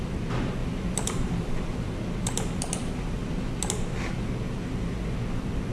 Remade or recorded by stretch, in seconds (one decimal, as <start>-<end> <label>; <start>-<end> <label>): 0.0-5.7 recorded